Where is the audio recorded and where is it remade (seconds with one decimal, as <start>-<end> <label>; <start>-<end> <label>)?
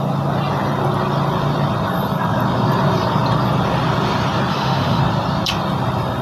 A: 0.0-4.5 recorded; 4.5-5.0 remade; 5.0-6.2 recorded